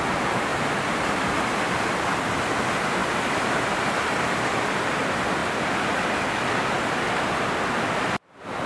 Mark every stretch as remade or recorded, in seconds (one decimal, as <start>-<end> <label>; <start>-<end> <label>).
0.0-8.7 recorded